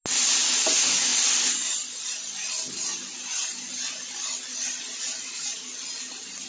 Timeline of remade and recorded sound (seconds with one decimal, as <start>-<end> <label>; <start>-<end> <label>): 0.0-4.9 recorded; 4.9-5.6 remade; 5.6-6.5 recorded